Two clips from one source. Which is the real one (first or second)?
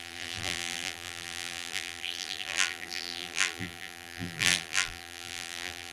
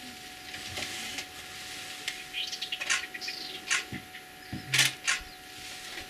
second